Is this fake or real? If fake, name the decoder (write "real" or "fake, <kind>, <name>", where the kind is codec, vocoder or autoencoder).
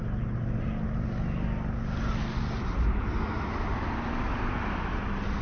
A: real